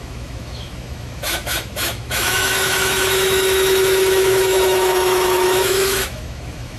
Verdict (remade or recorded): remade